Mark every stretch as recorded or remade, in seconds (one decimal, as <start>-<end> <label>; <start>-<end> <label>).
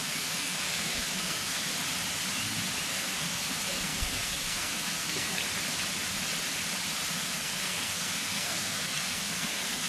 0.0-1.7 remade; 1.7-2.9 recorded; 2.9-5.4 remade; 5.4-7.1 recorded; 7.1-9.9 remade